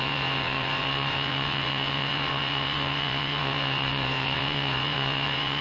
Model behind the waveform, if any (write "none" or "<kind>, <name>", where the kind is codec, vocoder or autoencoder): vocoder, WaveNeXt